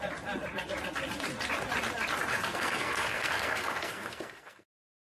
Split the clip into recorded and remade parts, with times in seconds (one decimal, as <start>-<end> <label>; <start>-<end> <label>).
0.0-2.3 recorded; 2.3-5.0 remade